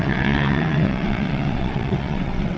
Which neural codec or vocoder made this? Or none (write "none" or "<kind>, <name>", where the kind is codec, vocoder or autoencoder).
vocoder, WaveNeXt